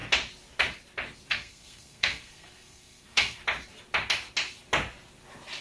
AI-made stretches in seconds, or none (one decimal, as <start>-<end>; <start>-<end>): 1.3-3.4